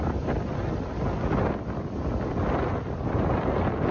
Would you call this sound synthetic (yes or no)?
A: no